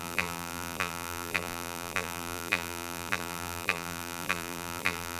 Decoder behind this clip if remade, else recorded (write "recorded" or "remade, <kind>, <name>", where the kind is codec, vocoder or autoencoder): remade, vocoder, BigVGAN v2